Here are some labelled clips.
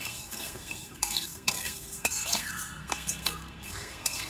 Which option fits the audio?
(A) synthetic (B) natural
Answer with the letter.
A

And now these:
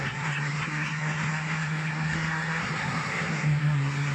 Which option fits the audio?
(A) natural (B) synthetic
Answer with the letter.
B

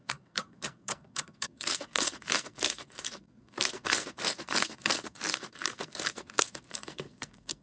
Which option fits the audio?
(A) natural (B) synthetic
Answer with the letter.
B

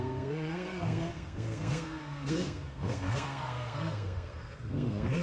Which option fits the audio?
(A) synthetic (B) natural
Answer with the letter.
A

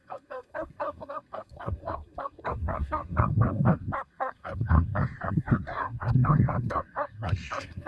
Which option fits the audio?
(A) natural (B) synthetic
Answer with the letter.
B